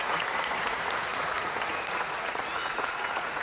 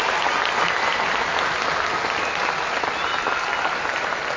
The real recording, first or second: second